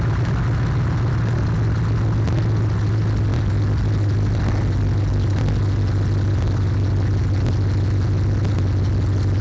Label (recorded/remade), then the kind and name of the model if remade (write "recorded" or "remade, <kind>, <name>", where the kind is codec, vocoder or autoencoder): recorded